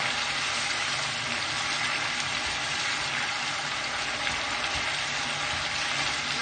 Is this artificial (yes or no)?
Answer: no